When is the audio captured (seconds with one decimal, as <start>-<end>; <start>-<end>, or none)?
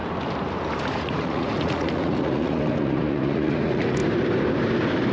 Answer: 0.0-0.8; 4.0-5.1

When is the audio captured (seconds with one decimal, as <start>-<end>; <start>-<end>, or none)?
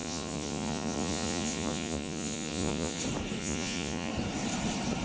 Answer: 3.0-3.4; 4.1-5.0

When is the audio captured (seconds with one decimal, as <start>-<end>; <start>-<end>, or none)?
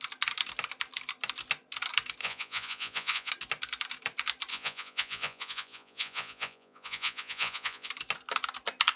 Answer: 0.0-2.2; 3.3-4.5; 7.9-9.0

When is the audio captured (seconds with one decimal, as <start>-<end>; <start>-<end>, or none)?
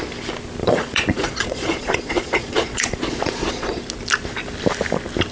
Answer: 0.0-0.6; 3.8-5.3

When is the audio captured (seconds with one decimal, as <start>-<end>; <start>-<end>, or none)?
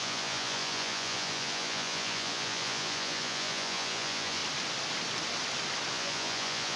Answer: 4.4-5.9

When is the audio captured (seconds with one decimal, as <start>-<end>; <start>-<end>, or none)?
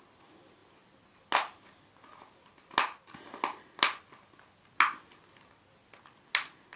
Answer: 0.0-6.8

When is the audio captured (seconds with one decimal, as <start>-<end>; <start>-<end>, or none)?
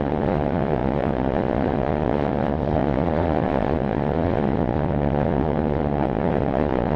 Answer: none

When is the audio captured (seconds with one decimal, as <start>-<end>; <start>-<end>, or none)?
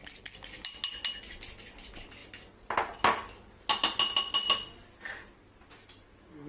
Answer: 0.0-6.5